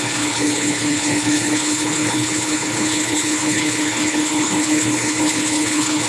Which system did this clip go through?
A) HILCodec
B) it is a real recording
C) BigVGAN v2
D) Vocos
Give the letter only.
A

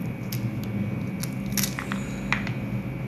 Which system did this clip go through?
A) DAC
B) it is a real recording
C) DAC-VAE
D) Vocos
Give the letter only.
B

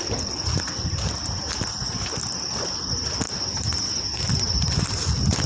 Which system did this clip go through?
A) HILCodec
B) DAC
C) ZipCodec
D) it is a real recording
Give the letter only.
D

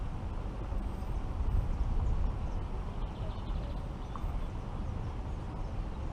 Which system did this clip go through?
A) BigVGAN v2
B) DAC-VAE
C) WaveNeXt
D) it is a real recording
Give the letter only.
D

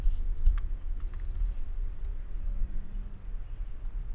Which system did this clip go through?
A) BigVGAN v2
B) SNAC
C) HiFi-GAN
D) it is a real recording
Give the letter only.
D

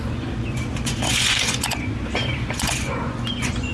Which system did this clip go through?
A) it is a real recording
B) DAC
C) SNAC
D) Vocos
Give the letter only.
D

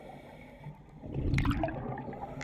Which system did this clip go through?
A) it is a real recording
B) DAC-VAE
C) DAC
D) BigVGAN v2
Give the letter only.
A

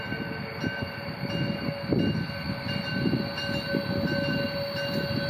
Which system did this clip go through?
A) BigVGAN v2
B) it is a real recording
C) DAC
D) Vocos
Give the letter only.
B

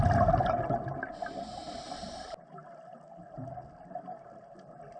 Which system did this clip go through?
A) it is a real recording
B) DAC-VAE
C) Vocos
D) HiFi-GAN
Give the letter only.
A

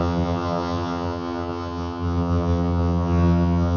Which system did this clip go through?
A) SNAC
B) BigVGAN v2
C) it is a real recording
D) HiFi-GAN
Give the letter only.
D